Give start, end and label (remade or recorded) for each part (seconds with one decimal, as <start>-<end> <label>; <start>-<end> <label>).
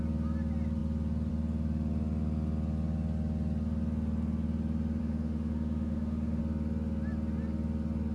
0.0-5.0 recorded; 5.0-6.4 remade; 6.4-8.1 recorded